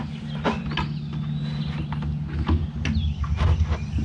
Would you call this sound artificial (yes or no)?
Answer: no